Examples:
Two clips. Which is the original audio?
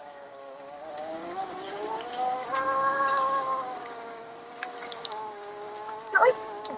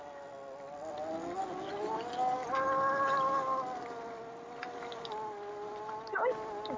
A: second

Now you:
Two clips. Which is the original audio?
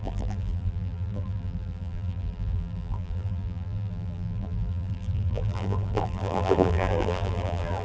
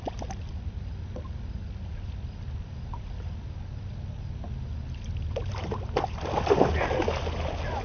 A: second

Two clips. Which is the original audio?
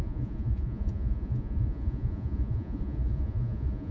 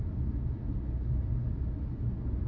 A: second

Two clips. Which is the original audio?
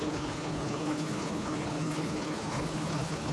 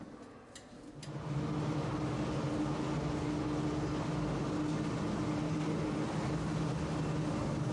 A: second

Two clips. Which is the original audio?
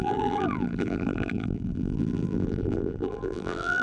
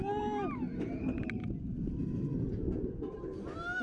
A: second